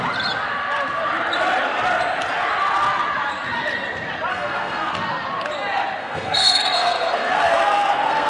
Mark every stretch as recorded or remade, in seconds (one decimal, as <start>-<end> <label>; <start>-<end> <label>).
0.0-4.3 recorded; 4.3-4.9 remade; 4.9-6.0 recorded; 6.0-8.3 remade